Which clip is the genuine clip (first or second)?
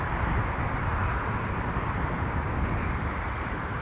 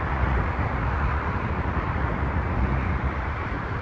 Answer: first